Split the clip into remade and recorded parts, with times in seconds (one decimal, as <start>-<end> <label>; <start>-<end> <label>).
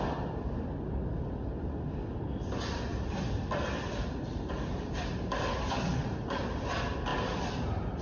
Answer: 0.0-2.9 recorded; 2.9-6.3 remade; 6.3-8.0 recorded